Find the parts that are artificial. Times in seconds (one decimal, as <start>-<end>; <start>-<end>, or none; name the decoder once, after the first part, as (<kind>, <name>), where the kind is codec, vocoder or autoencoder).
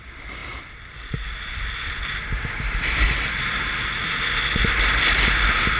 none